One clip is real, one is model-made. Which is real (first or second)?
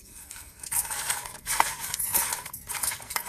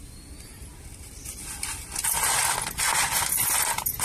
second